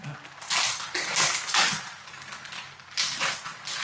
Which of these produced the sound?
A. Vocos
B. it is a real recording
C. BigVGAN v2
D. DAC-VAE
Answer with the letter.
B